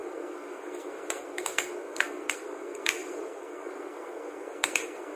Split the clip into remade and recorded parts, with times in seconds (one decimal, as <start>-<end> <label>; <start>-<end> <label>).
0.0-5.2 remade